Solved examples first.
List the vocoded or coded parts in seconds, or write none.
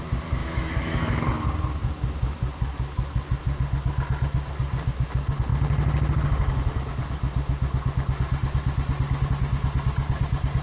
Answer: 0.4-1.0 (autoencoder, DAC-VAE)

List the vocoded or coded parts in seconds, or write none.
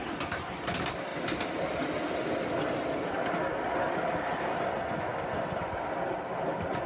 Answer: none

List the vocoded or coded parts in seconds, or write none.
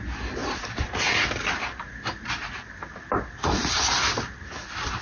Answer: none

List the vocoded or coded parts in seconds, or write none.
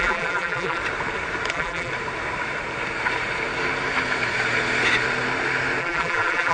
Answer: 0.0-0.8 (vocoder, BigVGAN v2); 1.5-1.9; 5.8-6.5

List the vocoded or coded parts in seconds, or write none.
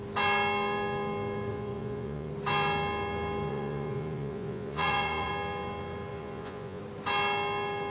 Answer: 1.5-2.3 (vocoder, Vocos); 3.5-5.3; 6.1-6.8